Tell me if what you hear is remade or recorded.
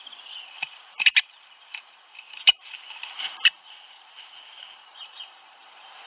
remade